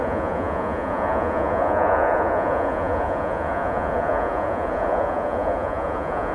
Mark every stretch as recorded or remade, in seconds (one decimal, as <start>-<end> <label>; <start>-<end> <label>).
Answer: 0.0-6.3 remade